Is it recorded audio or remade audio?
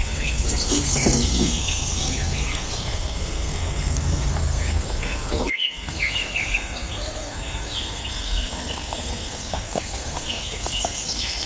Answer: remade